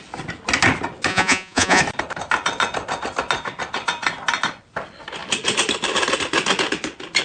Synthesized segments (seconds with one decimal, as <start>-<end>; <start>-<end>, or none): 1.1-1.8